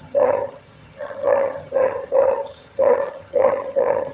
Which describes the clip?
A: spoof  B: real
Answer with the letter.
A